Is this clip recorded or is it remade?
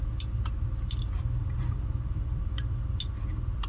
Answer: recorded